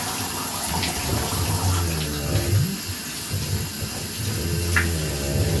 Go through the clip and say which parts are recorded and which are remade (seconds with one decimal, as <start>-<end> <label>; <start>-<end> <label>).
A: 0.0-5.6 recorded